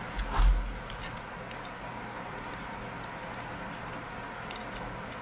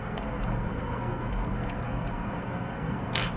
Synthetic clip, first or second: second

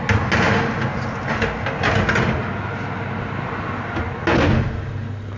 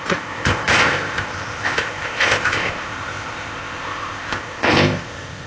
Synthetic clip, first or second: second